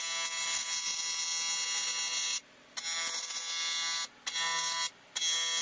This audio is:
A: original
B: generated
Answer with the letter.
A